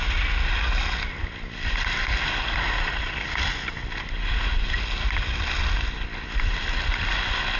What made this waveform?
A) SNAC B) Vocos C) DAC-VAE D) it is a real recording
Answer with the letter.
D